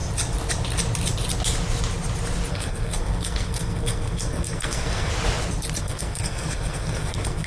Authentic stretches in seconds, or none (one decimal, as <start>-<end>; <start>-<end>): 0.0-2.5; 5.1-5.8